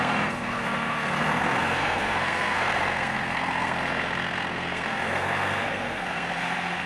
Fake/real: fake